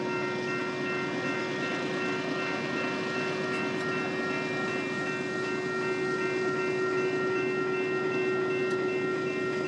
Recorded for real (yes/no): yes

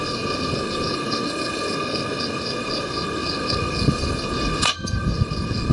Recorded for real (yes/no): no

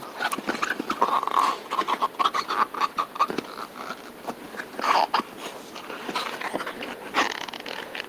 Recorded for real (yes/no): yes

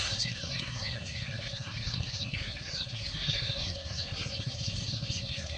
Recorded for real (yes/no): no